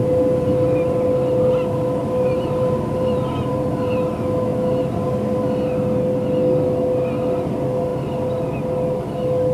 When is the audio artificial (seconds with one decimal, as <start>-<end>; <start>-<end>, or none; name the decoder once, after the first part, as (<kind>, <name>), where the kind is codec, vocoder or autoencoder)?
2.0-4.1 (vocoder, BigVGAN v2)